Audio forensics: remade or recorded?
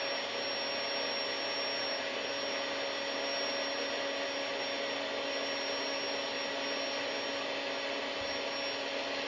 recorded